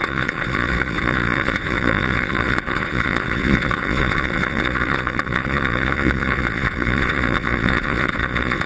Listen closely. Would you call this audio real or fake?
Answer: fake